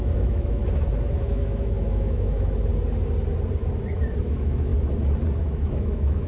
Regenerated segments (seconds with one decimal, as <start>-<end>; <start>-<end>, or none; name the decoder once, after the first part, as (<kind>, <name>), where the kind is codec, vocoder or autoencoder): 0.0-0.6 (autoencoder, DAC-VAE); 1.2-2.7; 4.2-4.7; 5.4-6.3